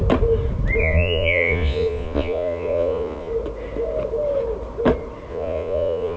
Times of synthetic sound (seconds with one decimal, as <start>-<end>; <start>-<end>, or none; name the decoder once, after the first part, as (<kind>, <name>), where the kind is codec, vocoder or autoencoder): 0.8-3.3 (vocoder, Vocos); 5.3-6.2